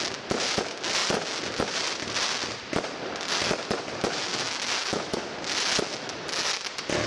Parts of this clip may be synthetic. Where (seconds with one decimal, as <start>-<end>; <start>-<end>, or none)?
4.3-5.2; 5.9-6.5